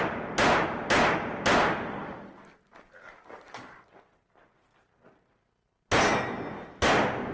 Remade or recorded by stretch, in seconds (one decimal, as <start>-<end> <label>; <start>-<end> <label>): 0.0-7.3 recorded